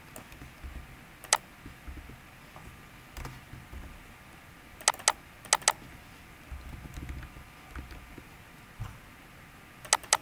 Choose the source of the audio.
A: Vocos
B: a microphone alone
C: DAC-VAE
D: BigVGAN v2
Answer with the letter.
B